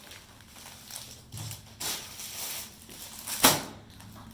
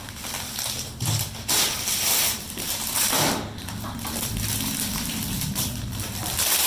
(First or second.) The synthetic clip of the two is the second